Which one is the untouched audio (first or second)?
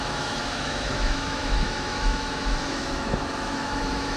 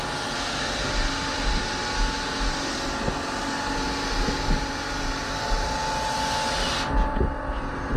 second